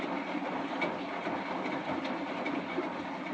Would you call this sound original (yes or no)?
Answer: yes